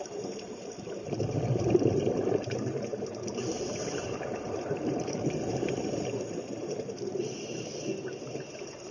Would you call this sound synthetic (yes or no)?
yes